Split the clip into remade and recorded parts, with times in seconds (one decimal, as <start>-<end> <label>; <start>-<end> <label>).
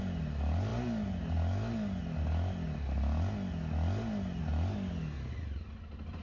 0.0-6.2 recorded